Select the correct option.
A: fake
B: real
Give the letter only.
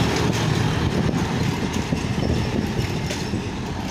A